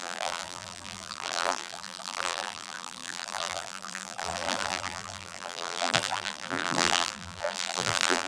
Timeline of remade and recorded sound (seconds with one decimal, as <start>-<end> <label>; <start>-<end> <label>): 0.0-8.3 remade